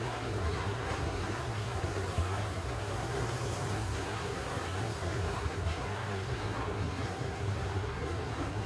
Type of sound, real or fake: fake